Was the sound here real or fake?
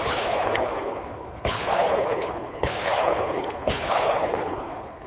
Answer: fake